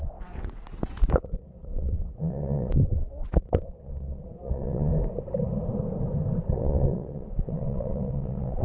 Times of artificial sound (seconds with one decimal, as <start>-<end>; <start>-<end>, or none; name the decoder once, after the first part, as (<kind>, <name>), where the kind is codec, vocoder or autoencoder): 0.0-4.9 (vocoder, WaveNeXt); 6.5-8.6

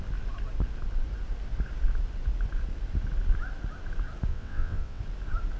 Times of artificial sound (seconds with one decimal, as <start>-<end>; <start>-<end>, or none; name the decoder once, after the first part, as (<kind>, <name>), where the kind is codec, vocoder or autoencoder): 4.3-5.0 (vocoder, WaveNeXt)